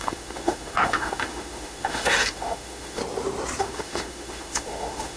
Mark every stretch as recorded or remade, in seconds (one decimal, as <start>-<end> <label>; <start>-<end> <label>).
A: 0.0-3.0 remade; 3.0-3.6 recorded; 3.6-5.2 remade